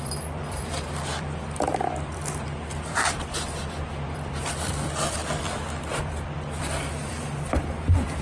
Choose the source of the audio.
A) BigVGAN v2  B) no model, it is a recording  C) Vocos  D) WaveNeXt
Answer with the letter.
A